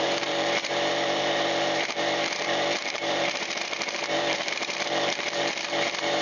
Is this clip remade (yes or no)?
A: yes